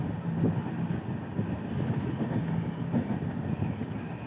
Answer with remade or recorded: recorded